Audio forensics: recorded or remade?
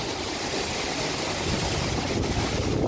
recorded